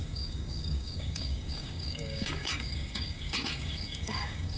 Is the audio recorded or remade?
remade